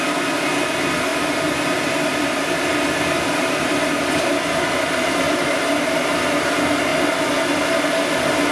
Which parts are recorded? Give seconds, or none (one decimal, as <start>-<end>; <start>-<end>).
0.0-1.1; 5.8-8.5